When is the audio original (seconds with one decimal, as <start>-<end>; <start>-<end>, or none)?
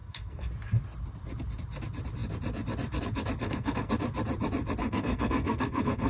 0.5-3.4; 3.9-4.8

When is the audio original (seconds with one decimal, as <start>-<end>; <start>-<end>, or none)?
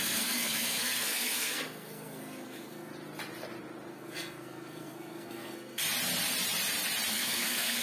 2.9-3.9; 5.8-7.1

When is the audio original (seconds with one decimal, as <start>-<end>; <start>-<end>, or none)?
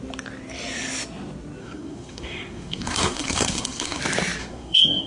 0.0-1.6; 4.0-4.4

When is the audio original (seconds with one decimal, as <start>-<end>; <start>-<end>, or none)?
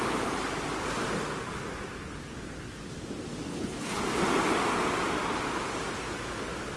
0.0-3.5; 4.0-6.8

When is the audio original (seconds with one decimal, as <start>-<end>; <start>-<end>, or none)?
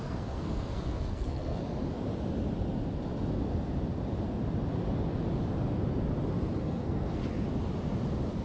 1.6-6.6; 7.2-8.4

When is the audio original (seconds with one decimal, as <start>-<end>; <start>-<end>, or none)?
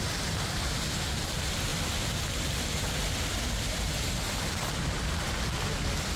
0.0-1.7; 3.9-6.2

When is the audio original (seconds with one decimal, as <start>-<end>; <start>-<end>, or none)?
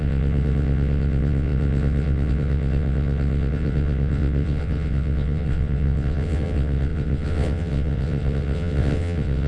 none